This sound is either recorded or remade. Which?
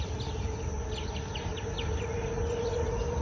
recorded